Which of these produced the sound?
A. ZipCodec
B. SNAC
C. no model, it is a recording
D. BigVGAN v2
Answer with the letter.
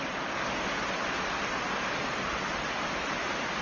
C